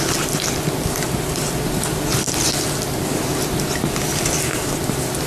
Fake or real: real